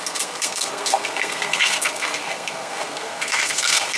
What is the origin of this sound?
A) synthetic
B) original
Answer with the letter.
A